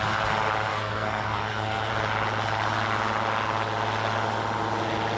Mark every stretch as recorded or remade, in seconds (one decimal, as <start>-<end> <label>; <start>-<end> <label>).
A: 0.0-0.7 recorded; 0.7-1.9 remade; 1.9-5.2 recorded

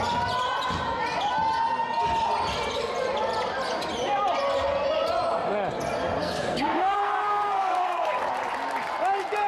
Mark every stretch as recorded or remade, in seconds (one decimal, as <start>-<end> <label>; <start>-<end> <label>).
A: 0.0-6.2 recorded; 6.2-8.2 remade; 8.2-9.5 recorded

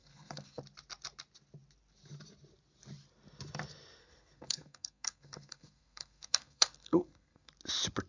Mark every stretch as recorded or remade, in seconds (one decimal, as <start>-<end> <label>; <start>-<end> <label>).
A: 0.0-0.6 remade; 0.6-4.0 recorded; 4.0-7.5 remade; 7.5-8.1 recorded

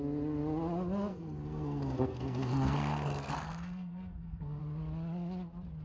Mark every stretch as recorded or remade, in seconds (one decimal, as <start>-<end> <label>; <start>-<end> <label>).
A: 0.0-1.1 recorded; 1.1-4.6 remade; 4.6-5.8 recorded